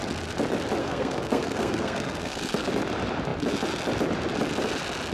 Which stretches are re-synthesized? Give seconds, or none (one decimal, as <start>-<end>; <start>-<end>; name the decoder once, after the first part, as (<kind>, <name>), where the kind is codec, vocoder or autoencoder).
0.8-2.7 (codec, SNAC)